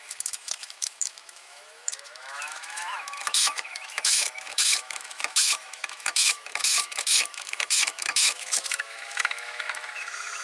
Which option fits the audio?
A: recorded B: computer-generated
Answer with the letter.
B